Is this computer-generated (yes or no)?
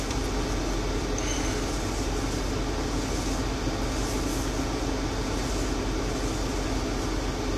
no